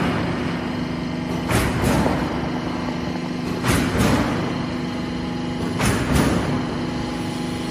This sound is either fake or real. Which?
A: real